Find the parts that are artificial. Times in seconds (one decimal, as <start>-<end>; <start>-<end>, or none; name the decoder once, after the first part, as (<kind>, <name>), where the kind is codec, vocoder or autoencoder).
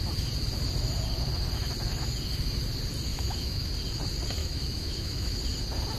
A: 3.1-3.7 (autoencoder, DAC-VAE); 4.4-5.4